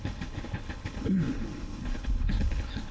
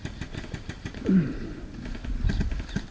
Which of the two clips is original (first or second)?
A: second